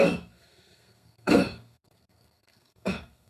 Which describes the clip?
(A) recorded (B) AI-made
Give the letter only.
B